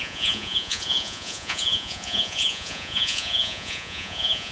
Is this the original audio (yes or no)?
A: no